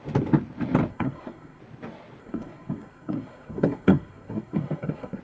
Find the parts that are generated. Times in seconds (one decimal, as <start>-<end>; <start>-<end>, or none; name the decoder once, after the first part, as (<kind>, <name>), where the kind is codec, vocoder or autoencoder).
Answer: 0.9-1.6 (codec, SNAC); 2.2-5.2